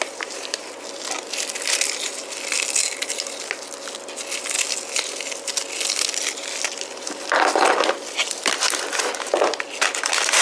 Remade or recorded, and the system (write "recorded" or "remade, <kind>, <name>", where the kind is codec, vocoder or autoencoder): recorded